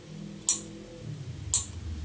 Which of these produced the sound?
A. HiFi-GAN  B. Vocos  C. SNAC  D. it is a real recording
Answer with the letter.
D